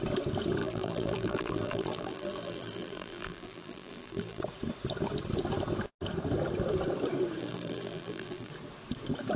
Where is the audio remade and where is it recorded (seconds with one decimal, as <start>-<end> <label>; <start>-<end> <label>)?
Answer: 0.0-0.6 recorded; 0.6-4.4 remade; 4.4-7.4 recorded; 7.4-8.5 remade; 8.5-9.4 recorded